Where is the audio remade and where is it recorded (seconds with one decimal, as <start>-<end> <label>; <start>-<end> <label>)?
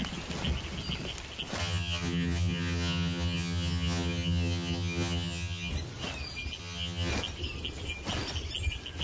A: 0.0-1.6 recorded; 1.6-5.7 remade; 5.7-6.6 recorded; 6.6-7.1 remade; 7.1-9.0 recorded